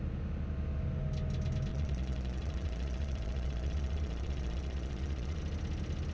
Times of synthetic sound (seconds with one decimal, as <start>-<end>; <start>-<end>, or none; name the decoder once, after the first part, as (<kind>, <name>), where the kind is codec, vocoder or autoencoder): 1.7-5.4 (vocoder, Vocos)